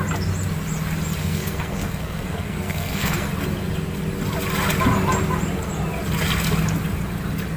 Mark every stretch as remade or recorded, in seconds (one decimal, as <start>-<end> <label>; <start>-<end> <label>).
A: 0.0-1.2 recorded; 1.2-3.3 remade; 3.3-7.6 recorded